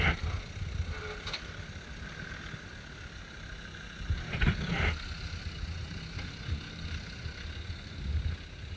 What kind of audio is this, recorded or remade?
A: recorded